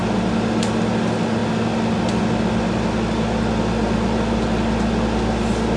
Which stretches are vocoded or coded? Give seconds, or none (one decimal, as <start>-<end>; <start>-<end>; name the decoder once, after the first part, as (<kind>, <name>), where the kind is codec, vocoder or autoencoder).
none